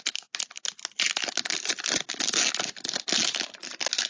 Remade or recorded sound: recorded